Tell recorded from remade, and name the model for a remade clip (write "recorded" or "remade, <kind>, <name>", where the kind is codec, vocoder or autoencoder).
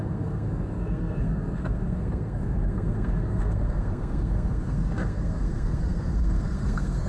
remade, codec, SNAC